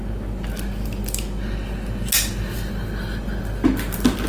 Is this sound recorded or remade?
recorded